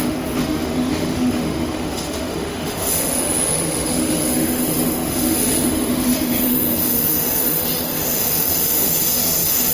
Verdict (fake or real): fake